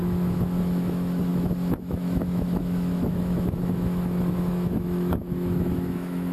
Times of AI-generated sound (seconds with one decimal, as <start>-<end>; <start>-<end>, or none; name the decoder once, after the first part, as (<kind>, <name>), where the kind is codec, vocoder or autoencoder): 0.0-6.3 (autoencoder, DAC-VAE)